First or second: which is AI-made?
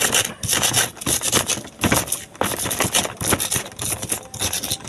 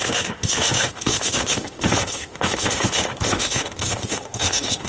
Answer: second